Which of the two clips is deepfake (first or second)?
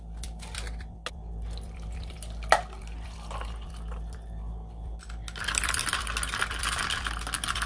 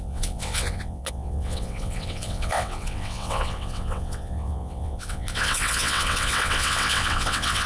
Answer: second